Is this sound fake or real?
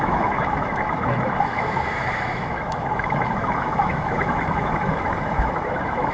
fake